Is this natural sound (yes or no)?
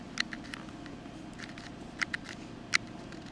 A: yes